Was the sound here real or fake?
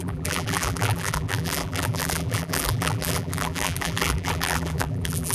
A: fake